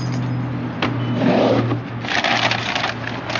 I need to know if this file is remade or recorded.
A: recorded